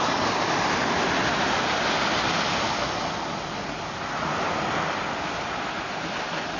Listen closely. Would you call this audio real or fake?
real